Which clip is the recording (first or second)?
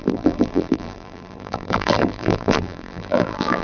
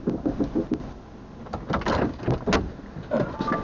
second